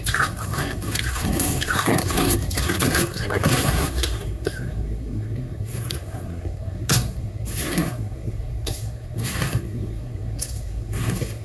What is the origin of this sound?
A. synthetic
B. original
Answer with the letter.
A